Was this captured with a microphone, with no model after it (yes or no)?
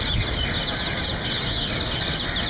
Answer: yes